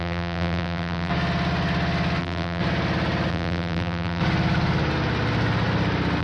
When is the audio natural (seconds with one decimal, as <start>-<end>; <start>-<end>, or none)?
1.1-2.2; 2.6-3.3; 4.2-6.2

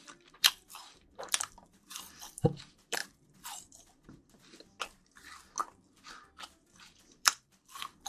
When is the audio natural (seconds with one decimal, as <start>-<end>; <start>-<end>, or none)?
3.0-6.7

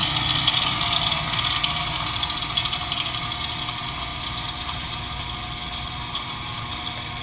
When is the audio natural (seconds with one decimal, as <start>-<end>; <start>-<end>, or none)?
0.0-4.1; 5.2-5.7; 6.6-7.2

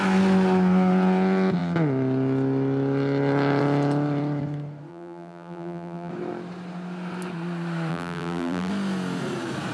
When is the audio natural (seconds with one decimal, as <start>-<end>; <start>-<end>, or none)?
0.0-4.9; 6.1-7.9; 8.7-9.7

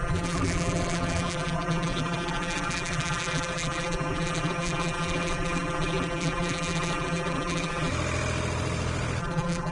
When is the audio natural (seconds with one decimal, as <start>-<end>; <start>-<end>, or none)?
7.9-9.2

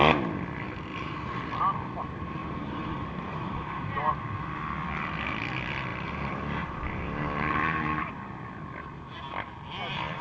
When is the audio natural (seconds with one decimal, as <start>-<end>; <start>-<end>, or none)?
0.0-0.9; 1.6-2.4; 4.1-5.9; 8.1-10.2